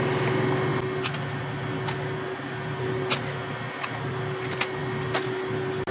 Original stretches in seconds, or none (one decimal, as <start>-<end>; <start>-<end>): 0.0-5.9